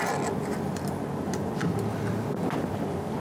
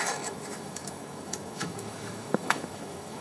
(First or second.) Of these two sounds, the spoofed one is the second